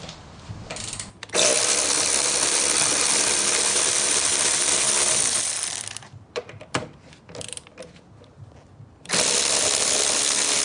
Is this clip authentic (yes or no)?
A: no